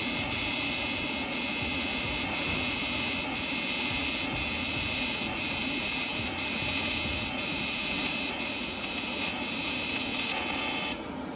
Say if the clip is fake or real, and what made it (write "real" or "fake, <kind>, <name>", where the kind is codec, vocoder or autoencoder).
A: fake, vocoder, Vocos